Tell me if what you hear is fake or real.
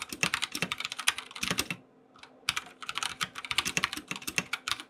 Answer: real